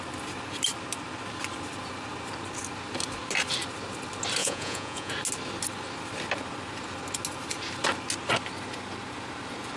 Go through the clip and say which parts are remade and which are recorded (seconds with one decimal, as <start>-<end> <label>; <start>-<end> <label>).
0.0-4.4 recorded; 4.4-5.1 remade; 5.1-9.8 recorded